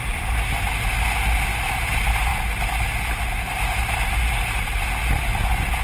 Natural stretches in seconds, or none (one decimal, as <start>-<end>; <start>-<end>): 0.0-5.8